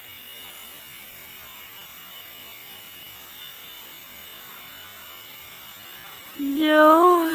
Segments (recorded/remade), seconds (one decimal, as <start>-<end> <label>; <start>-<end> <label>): 0.0-6.5 recorded; 6.5-7.3 remade